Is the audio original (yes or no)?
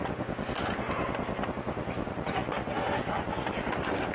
yes